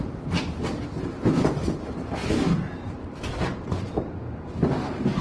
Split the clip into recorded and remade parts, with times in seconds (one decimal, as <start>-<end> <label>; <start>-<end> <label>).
0.0-5.2 recorded